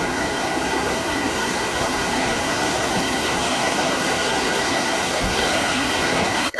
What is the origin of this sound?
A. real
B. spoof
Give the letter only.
B